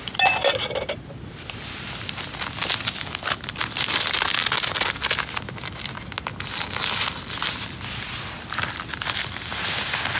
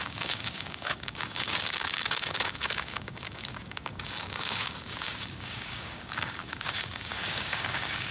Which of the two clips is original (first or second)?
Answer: first